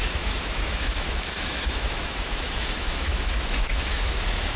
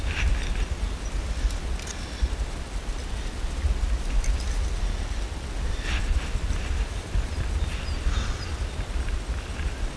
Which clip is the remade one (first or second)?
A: first